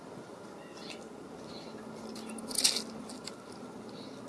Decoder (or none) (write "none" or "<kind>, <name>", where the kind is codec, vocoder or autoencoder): none